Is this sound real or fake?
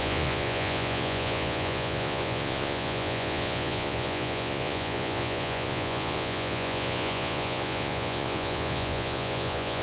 fake